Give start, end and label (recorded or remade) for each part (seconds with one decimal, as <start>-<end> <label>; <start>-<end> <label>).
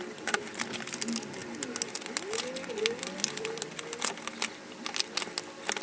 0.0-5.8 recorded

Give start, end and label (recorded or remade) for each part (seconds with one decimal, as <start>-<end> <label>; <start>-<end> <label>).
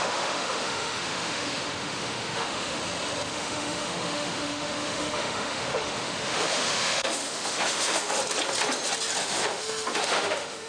0.0-2.8 remade; 2.8-3.3 recorded; 3.3-8.2 remade; 8.2-9.2 recorded; 9.2-10.7 remade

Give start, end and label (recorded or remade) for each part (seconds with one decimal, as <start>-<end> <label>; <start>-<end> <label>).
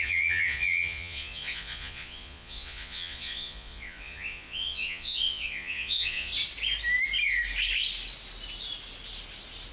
0.0-6.3 remade; 6.3-9.7 recorded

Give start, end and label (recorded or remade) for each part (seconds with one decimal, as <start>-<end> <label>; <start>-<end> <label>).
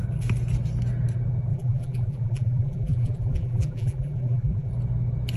0.0-1.5 recorded; 1.5-4.7 remade; 4.7-5.4 recorded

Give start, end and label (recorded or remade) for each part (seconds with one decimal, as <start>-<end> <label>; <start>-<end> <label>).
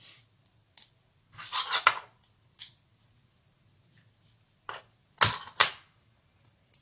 0.0-5.6 recorded; 5.6-6.8 remade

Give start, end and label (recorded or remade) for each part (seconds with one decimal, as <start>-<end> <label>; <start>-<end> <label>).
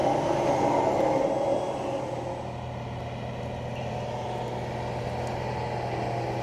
0.0-6.4 recorded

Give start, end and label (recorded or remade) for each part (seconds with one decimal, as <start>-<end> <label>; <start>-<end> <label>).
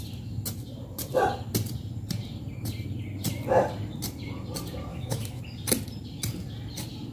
0.0-4.9 recorded; 4.9-5.4 remade; 5.4-7.1 recorded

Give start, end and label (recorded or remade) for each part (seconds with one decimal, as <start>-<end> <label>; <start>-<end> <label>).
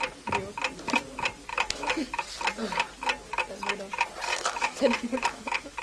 0.0-1.5 recorded; 1.5-2.2 remade; 2.2-4.3 recorded; 4.3-5.8 remade